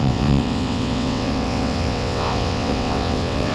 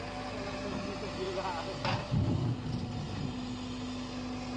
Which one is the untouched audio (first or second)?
second